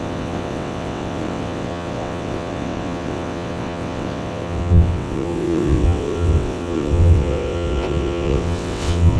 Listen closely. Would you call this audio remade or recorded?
remade